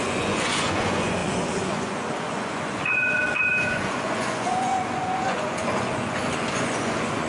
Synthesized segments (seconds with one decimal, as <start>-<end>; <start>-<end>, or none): 0.0-7.3

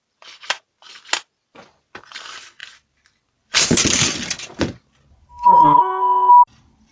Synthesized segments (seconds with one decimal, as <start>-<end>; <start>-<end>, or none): 5.3-6.3

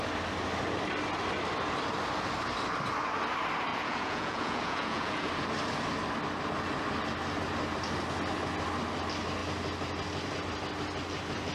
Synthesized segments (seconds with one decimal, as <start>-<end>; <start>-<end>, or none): 3.7-5.3

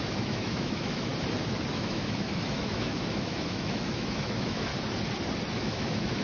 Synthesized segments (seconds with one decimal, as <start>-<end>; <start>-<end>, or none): 0.0-1.1; 1.7-4.7; 5.5-6.2

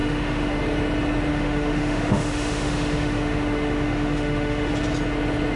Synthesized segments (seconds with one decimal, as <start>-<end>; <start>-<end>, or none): 0.0-0.6; 1.3-4.7

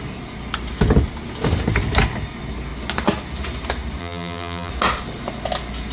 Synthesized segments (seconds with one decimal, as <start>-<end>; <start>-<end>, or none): 4.0-4.7

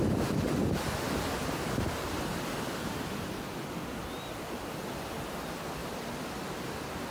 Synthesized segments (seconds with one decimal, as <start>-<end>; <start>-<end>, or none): 1.4-2.3; 3.8-4.4